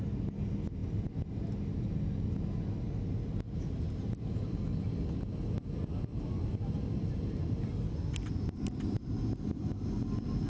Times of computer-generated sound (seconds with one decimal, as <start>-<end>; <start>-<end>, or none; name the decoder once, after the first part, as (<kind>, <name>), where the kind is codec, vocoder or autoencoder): 6.1-9.2 (vocoder, BigVGAN v2)